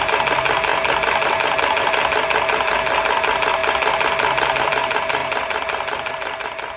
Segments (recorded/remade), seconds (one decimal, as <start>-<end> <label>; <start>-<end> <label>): 0.0-6.8 recorded

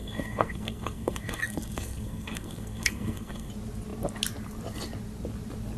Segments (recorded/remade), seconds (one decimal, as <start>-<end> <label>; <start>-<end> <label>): 0.0-3.5 remade; 3.5-5.8 recorded